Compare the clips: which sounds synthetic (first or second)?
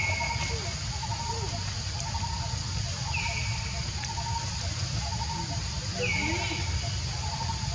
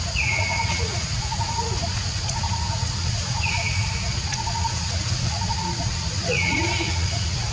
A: second